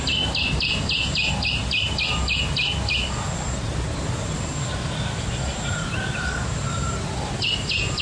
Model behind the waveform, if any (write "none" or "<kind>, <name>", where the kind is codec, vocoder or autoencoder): none